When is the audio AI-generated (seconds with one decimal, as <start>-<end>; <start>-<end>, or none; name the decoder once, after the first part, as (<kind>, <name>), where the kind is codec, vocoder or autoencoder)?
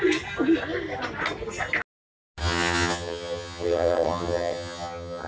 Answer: 2.4-5.3 (vocoder, HiFi-GAN)